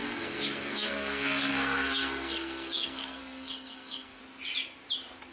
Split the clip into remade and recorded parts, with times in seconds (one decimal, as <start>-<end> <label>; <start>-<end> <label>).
0.0-4.2 remade; 4.2-5.3 recorded